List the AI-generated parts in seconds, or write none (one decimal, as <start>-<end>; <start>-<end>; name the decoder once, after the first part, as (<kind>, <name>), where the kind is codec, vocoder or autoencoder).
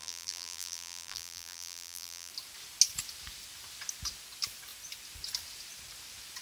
0.0-2.3 (vocoder, BigVGAN v2)